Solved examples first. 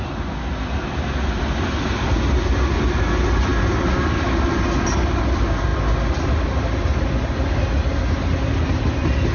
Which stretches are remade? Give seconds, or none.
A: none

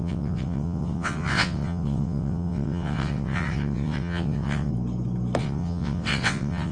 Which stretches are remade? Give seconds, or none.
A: 0.0-4.7; 5.4-6.7

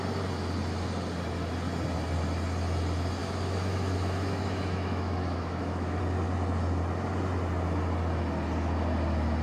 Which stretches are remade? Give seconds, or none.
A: 3.2-6.0

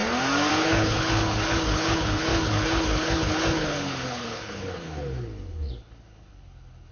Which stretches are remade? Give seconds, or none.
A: 0.5-6.9

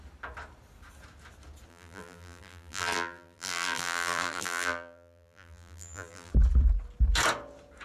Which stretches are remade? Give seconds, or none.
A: 1.7-6.3

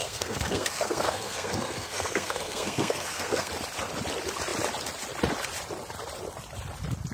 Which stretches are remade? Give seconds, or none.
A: 0.0-3.5

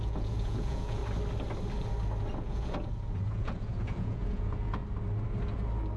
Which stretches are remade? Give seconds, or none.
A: 0.0-1.0; 2.4-4.8